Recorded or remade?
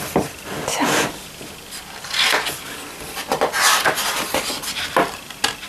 recorded